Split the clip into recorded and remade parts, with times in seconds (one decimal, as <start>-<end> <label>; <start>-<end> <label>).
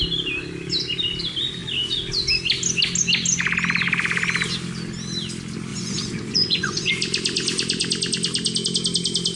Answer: 0.0-5.7 recorded; 5.7-6.9 remade; 6.9-9.4 recorded